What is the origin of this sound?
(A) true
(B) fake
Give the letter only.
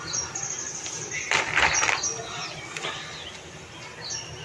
A